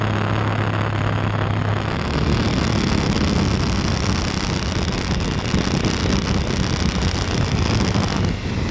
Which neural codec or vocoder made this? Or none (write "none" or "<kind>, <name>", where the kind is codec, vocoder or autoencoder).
none